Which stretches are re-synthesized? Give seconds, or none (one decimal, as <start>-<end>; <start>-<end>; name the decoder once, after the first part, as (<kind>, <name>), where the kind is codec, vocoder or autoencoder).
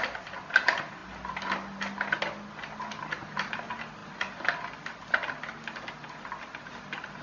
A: none